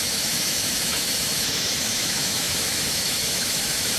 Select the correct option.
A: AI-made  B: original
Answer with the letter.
A